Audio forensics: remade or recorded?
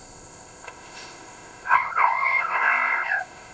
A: remade